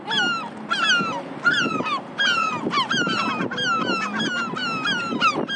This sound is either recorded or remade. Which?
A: recorded